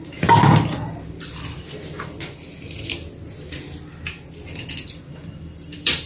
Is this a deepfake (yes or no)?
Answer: yes